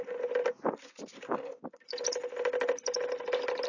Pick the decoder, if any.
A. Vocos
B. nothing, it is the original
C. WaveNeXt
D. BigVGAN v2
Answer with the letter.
B